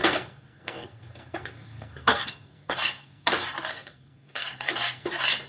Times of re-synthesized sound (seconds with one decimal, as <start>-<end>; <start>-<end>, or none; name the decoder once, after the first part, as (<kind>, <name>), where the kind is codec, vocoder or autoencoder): 0.0-3.3 (codec, SNAC); 3.7-5.1